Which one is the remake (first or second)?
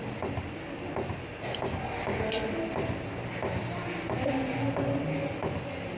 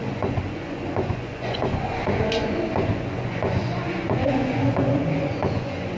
second